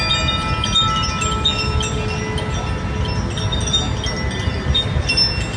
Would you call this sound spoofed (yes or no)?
no